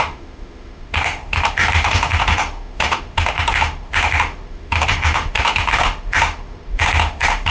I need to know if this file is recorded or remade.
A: remade